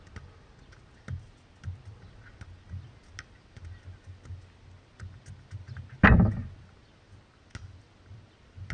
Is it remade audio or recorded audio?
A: recorded